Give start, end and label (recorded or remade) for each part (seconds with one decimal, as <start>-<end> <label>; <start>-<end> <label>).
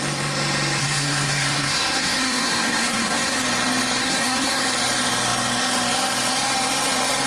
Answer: 0.0-0.8 recorded; 0.8-3.4 remade; 3.4-4.0 recorded; 4.0-4.6 remade; 4.6-7.3 recorded